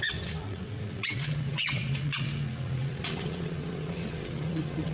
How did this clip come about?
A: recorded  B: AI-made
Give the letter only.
B